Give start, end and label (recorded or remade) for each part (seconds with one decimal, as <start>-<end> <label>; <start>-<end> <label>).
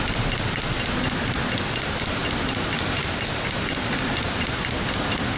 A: 0.0-5.4 recorded